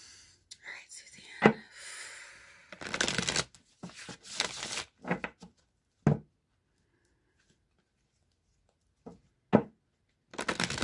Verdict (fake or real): real